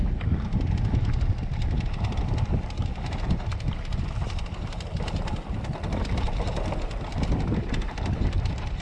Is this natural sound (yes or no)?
yes